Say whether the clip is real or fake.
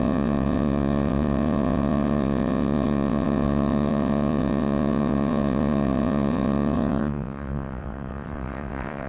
fake